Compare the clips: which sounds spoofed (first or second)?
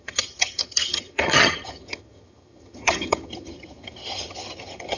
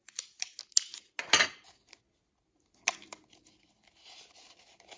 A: first